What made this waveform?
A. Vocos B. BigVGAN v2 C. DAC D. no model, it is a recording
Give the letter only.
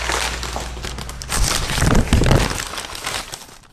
D